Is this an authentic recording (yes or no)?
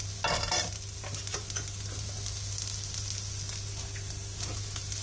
yes